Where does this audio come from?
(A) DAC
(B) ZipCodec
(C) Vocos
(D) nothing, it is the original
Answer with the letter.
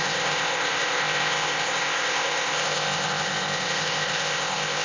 B